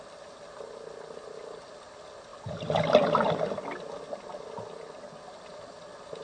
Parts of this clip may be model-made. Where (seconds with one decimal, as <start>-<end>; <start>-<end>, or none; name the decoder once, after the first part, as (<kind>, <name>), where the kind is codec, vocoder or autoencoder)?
none